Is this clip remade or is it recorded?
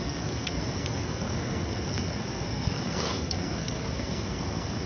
remade